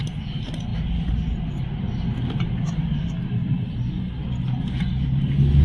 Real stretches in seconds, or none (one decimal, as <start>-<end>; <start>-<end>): 0.0-5.6

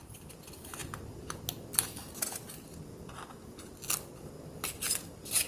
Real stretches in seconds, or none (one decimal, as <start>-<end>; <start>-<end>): 0.0-5.5

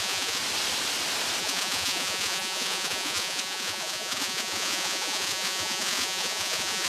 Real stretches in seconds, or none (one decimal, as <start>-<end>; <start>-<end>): 0.4-1.4

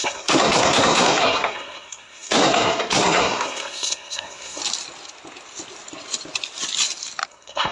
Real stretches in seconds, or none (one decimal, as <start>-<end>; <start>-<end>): 4.6-7.3

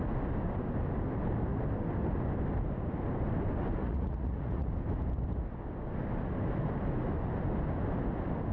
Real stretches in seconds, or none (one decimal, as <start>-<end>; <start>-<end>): 0.0-3.8; 4.7-8.5